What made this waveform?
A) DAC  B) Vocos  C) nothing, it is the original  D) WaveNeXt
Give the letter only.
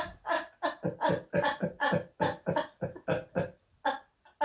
C